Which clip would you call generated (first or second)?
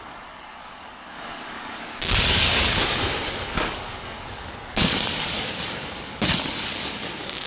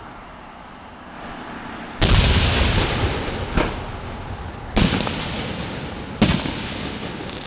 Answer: first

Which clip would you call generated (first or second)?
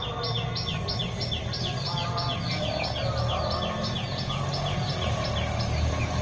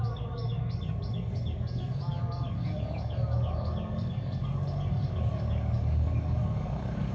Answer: second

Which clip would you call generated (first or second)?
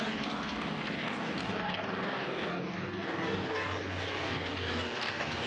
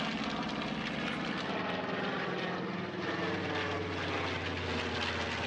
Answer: first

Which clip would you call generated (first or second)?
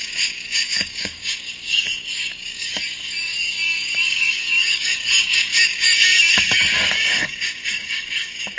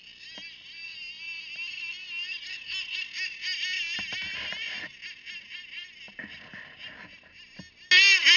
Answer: first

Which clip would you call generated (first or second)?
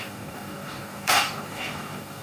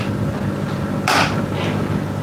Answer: first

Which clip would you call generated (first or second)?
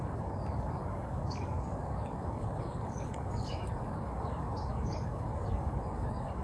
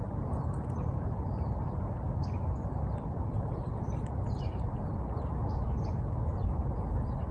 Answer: first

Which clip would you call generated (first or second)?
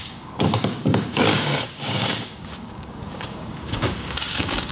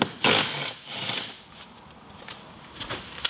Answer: first